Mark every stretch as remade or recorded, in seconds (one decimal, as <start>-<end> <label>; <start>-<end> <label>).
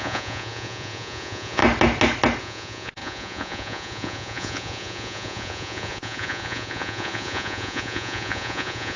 0.0-1.6 remade; 1.6-2.4 recorded; 2.4-9.0 remade